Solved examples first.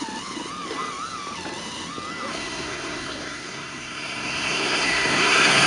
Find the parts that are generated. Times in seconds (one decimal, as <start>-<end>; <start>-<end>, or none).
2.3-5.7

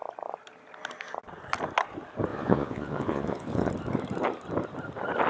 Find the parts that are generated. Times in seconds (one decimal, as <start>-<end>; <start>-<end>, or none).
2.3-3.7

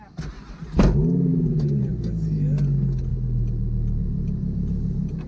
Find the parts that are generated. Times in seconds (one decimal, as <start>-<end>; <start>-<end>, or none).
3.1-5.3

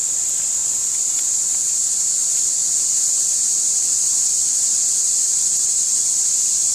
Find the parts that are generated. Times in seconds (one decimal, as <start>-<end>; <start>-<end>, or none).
0.6-2.1; 2.6-6.7

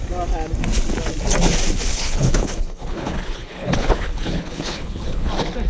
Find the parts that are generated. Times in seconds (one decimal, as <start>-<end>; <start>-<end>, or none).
1.9-5.3

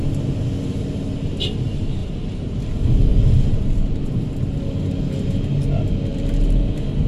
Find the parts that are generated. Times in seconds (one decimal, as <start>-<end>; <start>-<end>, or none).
2.0-2.6; 6.1-7.1

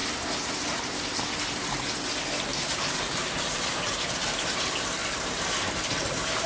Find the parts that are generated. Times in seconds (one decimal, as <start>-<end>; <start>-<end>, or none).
2.5-4.4; 5.0-6.5